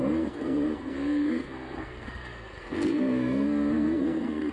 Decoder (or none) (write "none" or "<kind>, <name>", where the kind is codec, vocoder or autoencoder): codec, SNAC